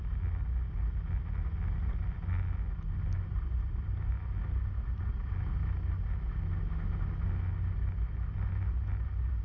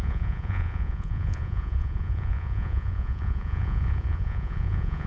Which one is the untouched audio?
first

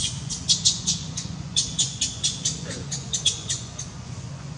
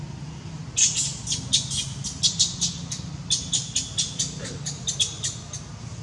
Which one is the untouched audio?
second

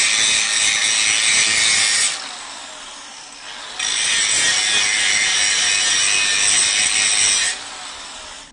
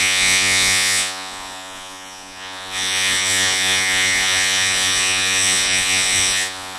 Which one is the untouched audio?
first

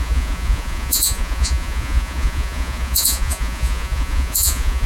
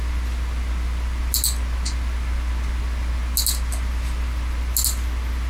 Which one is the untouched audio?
second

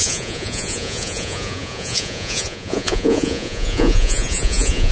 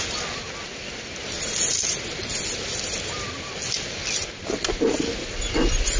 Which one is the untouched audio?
second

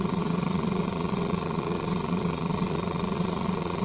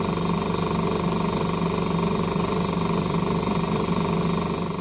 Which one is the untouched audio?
second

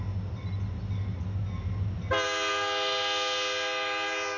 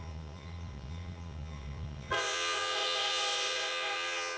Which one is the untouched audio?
first